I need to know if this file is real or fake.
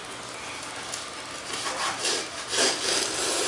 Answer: real